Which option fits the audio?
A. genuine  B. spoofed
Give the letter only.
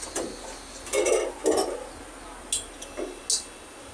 A